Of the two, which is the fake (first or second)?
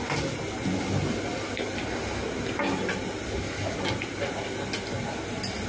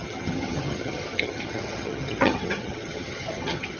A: second